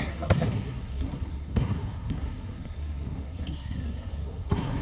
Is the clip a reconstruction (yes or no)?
yes